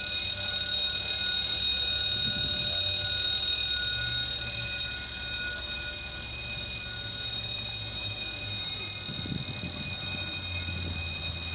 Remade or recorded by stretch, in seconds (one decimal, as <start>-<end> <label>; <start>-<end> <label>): 0.0-11.5 recorded